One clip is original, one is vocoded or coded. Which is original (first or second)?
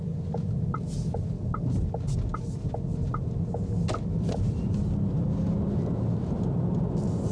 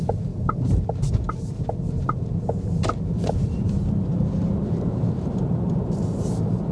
first